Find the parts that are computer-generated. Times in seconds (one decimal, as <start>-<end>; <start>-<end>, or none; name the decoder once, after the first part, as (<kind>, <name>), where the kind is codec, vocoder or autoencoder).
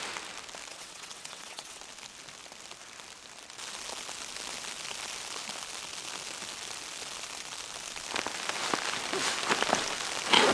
0.7-1.8 (vocoder, WaveNeXt)